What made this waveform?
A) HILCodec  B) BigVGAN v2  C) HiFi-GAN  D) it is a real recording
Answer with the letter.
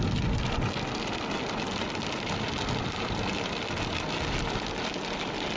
D